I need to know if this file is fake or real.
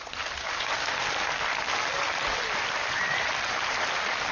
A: real